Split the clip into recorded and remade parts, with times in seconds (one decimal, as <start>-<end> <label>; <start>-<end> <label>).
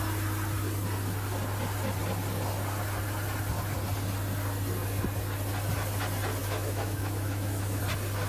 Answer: 0.0-6.4 recorded; 6.4-7.8 remade; 7.8-8.3 recorded